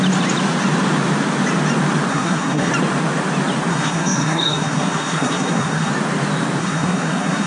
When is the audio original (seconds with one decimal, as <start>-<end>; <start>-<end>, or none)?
0.0-2.1; 2.7-3.7; 5.9-6.6